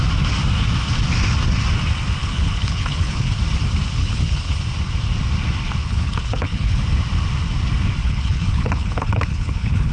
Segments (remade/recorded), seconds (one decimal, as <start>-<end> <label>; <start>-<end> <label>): 0.0-2.2 recorded; 2.2-3.4 remade; 3.4-4.0 recorded; 4.0-4.6 remade; 4.6-5.8 recorded; 5.8-6.8 remade; 6.8-8.0 recorded; 8.0-9.9 remade